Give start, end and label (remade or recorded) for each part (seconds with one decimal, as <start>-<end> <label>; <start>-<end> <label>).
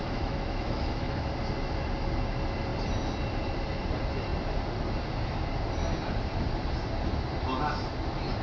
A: 0.0-1.3 remade; 1.3-8.4 recorded